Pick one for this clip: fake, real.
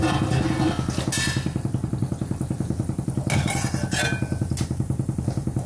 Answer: real